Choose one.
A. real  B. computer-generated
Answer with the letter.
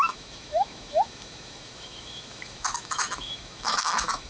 B